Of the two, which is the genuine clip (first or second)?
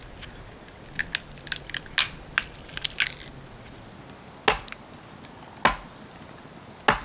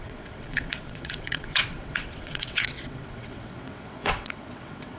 first